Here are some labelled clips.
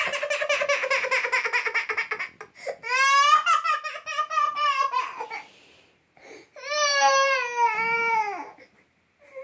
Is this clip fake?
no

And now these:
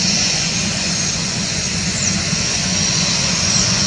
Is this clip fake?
yes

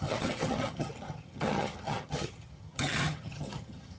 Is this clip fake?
yes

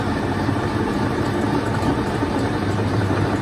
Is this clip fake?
yes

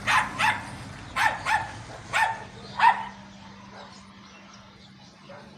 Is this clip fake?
no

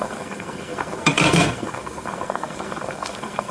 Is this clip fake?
yes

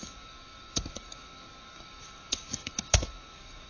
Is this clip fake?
yes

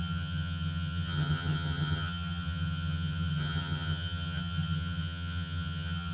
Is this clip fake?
yes